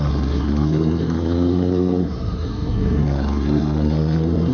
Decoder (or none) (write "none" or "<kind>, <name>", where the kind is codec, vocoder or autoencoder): codec, SNAC